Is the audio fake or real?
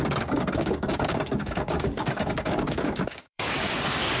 fake